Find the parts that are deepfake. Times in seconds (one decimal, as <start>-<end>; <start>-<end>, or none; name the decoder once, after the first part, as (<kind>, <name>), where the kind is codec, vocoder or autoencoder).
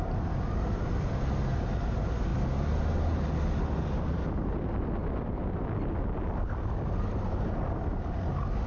none